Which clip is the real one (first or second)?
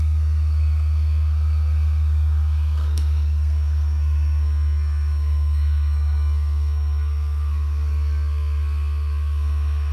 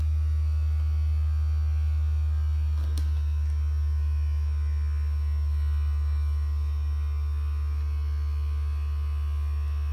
second